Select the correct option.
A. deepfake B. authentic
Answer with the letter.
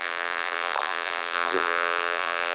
A